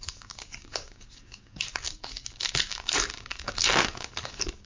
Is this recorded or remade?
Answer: remade